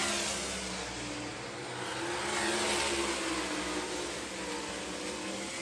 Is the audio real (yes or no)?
yes